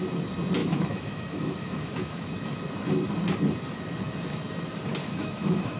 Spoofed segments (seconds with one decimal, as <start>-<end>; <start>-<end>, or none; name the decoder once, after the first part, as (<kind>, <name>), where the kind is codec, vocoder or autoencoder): 0.6-2.3 (autoencoder, DAC-VAE); 5.0-5.8